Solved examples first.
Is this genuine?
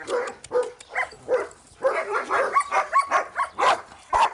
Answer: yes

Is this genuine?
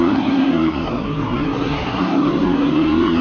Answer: no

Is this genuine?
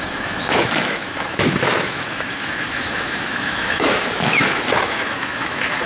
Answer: no